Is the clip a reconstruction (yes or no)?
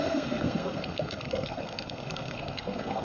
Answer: yes